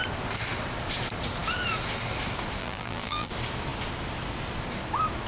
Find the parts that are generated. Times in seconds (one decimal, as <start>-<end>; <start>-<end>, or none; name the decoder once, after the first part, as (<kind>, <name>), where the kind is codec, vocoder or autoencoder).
2.6-3.3 (vocoder, BigVGAN v2)